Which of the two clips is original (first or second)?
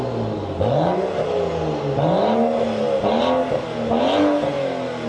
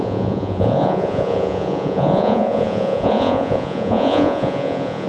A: first